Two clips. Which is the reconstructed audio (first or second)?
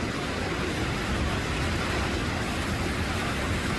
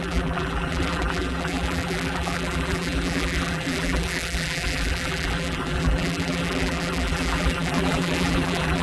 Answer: second